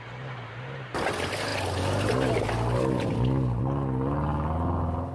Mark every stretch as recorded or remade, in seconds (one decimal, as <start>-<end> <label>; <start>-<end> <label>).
0.0-5.1 recorded